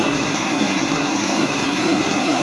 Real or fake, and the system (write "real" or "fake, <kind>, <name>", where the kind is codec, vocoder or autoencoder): fake, codec, SNAC